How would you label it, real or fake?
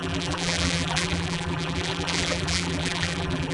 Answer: fake